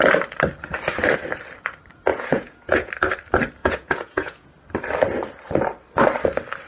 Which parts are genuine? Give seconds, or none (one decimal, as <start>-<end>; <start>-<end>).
0.0-2.1; 2.9-3.6; 4.5-6.7